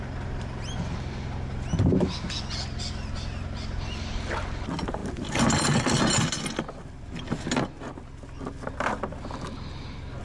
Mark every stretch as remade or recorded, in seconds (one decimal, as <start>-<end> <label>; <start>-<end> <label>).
0.0-10.2 recorded